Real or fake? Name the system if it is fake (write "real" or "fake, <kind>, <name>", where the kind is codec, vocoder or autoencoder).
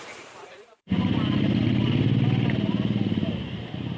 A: fake, vocoder, BigVGAN v2